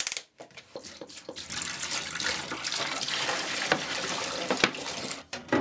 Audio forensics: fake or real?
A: fake